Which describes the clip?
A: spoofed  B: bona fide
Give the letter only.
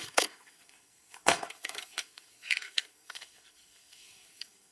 A